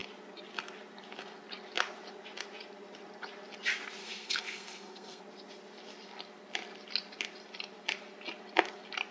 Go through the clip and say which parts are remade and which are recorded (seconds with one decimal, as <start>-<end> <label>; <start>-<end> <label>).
0.0-4.0 recorded; 4.0-5.2 remade; 5.2-9.1 recorded